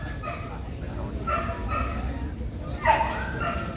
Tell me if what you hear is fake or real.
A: real